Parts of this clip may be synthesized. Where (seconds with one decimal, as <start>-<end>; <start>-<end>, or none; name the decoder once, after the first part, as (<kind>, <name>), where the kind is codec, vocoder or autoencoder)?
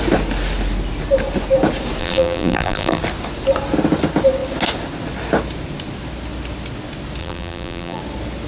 2.0-3.0 (vocoder, BigVGAN v2); 7.2-8.0